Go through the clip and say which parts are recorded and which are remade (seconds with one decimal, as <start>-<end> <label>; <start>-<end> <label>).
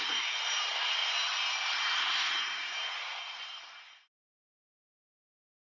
0.0-5.6 recorded